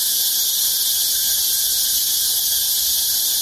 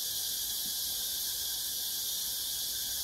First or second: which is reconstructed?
first